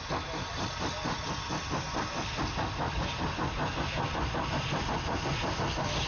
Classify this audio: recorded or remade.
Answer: recorded